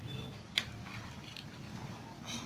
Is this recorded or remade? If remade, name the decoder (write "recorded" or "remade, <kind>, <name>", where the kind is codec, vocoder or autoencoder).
recorded